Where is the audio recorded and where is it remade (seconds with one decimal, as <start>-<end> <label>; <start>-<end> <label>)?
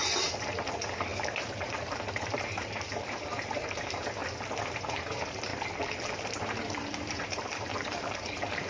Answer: 0.0-4.2 remade; 4.2-5.0 recorded; 5.0-5.5 remade; 5.5-6.2 recorded; 6.2-8.7 remade